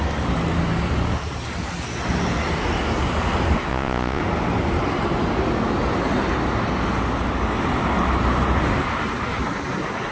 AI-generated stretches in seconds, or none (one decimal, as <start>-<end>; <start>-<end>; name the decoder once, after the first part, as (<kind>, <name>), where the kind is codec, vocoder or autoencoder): 3.7-4.2 (vocoder, Vocos)